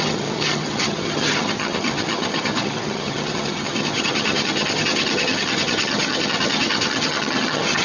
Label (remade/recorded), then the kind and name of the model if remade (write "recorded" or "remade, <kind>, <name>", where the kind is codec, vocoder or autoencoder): remade, vocoder, HiFi-GAN